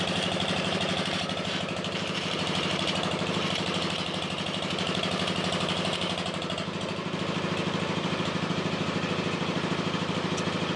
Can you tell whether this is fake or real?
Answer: fake